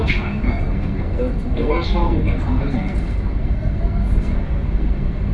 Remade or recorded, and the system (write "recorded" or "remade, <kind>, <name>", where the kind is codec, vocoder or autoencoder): remade, codec, SNAC